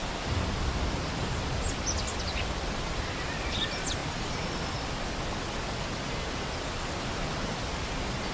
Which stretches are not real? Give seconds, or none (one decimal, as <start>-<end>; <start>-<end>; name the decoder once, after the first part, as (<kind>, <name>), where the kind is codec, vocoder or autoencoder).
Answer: none